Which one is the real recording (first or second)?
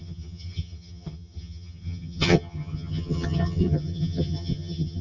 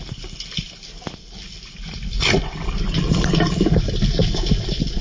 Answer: second